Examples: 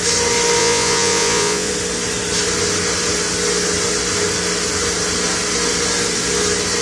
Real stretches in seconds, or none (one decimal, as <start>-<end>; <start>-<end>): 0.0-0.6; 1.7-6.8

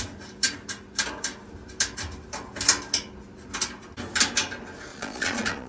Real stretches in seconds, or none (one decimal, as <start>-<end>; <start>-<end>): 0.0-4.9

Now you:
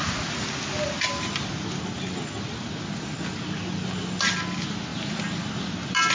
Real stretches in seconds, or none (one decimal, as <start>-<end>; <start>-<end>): 0.0-6.1

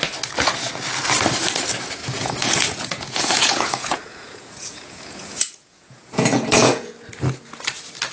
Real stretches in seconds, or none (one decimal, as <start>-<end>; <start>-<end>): 0.0-2.0; 6.9-8.1

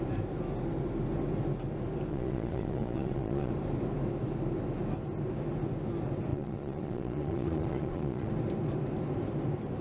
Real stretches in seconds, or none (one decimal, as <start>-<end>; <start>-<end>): 0.0-2.1; 3.5-6.3; 8.3-9.8